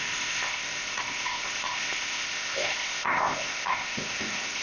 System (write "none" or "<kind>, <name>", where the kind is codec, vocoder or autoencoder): codec, ZipCodec